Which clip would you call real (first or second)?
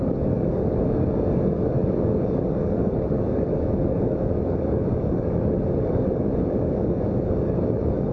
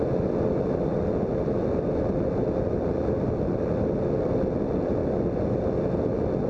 second